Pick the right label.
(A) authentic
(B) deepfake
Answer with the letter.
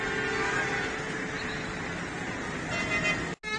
A